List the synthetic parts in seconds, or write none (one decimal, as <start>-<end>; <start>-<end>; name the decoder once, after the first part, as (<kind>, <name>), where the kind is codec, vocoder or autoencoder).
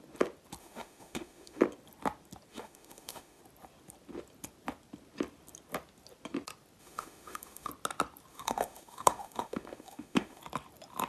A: 0.6-1.6 (autoencoder, DAC-VAE); 2.5-3.4; 6.8-7.7; 8.3-10.4